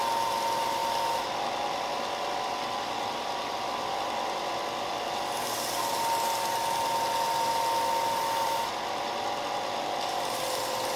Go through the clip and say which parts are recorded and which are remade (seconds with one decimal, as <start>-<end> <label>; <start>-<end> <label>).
0.0-11.0 recorded